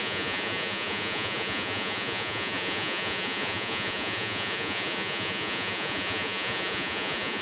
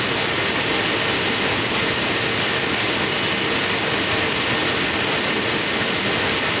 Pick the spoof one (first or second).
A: first